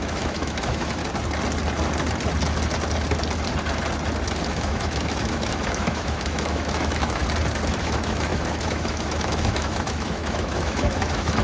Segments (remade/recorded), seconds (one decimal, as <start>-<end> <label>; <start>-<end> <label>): 0.0-1.0 remade; 1.0-4.5 recorded; 4.5-7.2 remade; 7.2-7.8 recorded; 7.8-11.4 remade